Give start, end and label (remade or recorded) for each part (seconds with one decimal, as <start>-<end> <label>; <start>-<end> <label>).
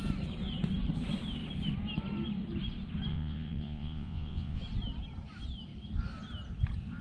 0.0-3.1 recorded; 3.1-4.6 remade; 4.6-7.0 recorded